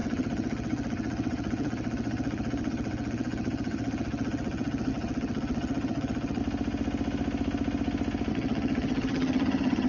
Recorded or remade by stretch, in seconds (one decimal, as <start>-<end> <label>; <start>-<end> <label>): 0.0-6.4 remade; 6.4-8.3 recorded; 8.3-9.9 remade